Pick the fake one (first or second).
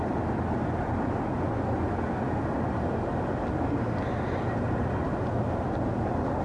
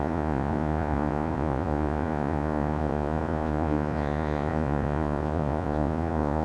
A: second